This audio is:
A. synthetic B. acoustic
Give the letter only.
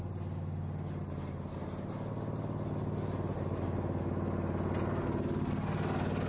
B